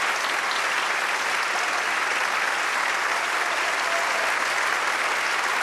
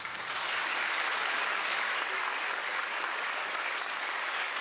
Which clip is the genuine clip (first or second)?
first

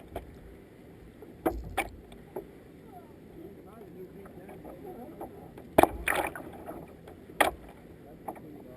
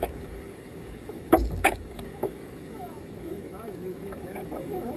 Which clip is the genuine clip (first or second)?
first